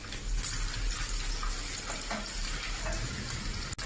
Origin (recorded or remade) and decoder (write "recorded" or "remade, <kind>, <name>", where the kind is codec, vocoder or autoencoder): recorded